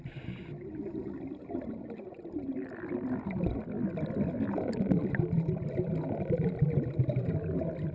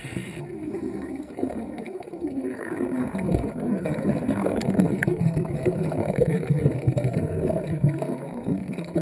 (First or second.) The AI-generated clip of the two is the second